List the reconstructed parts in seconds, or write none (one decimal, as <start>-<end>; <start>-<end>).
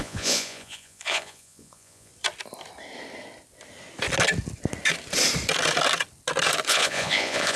0.0-2.1; 6.7-7.6